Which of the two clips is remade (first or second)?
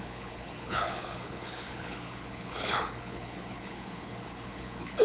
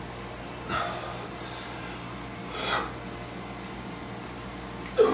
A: first